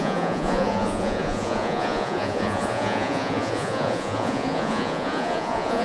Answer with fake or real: fake